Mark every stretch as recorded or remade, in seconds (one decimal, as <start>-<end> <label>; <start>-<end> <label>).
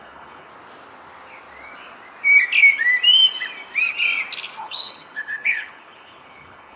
0.0-0.5 remade; 0.5-4.6 recorded; 4.6-6.8 remade